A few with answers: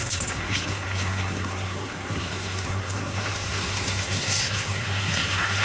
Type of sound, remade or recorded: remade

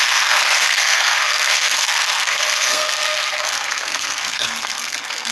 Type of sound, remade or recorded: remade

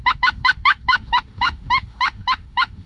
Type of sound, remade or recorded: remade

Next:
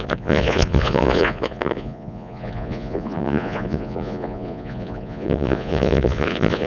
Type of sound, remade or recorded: remade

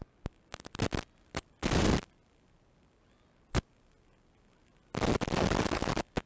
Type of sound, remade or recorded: recorded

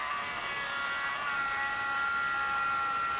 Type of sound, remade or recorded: recorded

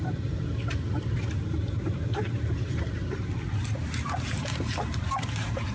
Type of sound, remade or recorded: remade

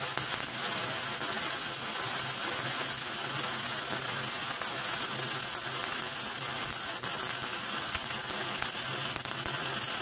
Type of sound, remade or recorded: recorded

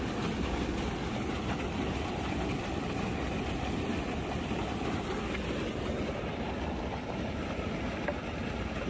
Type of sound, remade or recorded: recorded